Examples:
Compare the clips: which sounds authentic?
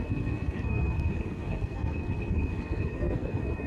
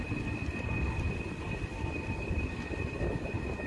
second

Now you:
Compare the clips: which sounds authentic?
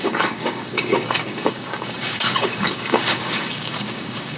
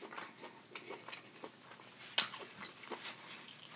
second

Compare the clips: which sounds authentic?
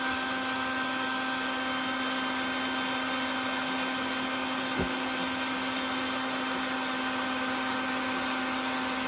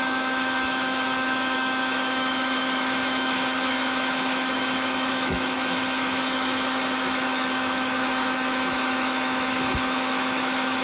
first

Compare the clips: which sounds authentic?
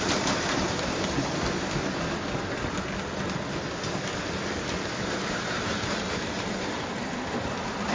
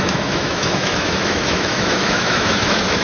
first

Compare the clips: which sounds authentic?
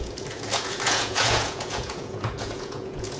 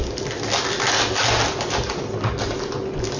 second